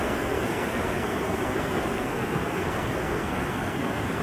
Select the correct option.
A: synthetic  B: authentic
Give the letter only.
A